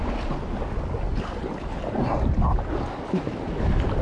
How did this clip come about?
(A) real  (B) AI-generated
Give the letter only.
A